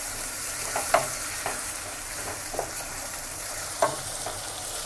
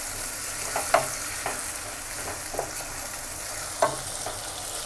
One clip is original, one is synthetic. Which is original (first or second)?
second